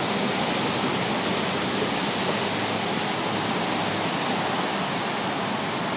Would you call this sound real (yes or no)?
yes